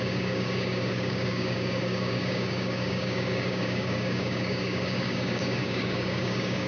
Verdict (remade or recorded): remade